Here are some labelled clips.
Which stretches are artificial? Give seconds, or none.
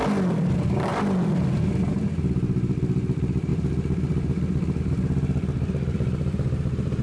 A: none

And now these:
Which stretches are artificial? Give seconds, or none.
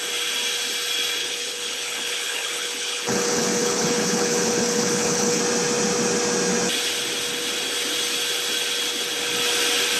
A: 1.2-5.4 (codec, HILCodec)